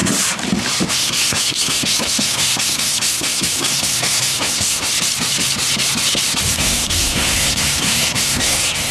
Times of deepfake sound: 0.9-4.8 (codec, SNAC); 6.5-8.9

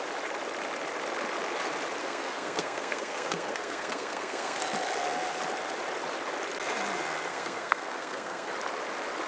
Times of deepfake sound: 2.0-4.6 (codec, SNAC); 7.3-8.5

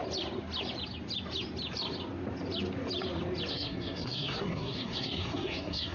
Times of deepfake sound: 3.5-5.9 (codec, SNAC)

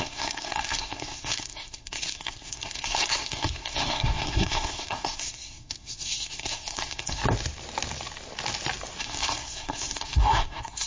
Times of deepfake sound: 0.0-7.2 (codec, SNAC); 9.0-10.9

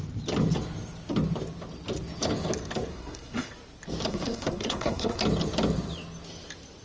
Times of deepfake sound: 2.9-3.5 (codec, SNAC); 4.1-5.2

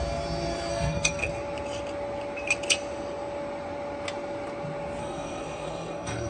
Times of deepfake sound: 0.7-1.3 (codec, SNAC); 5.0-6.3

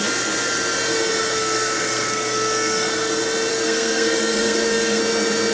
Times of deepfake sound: 1.3-3.1 (codec, SNAC); 3.5-5.0